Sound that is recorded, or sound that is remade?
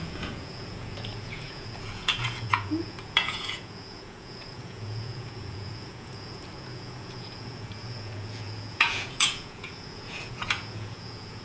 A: remade